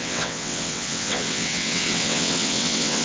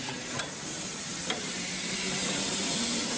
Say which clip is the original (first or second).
second